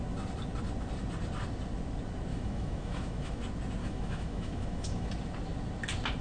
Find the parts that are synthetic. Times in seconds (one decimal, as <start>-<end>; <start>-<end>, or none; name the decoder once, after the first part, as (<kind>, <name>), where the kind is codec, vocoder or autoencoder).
2.3-3.4 (autoencoder, DAC-VAE); 3.8-5.1

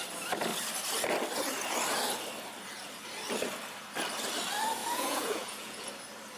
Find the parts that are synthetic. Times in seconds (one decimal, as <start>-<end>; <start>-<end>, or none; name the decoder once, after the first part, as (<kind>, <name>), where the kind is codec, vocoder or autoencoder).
4.8-5.9 (vocoder, Vocos)